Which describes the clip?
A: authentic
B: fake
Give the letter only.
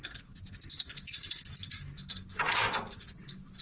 A